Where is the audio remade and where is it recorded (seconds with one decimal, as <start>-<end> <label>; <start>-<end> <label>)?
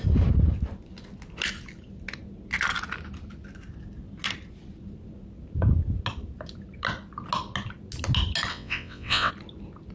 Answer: 0.0-8.5 recorded; 8.5-9.3 remade; 9.3-9.9 recorded